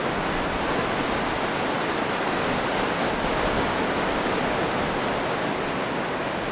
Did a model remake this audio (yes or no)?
no